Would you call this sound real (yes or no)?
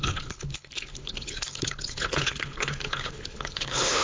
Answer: no